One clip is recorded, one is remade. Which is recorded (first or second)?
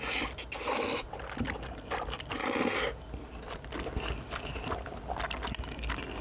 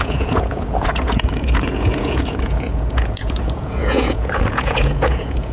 first